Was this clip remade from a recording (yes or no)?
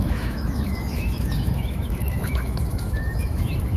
yes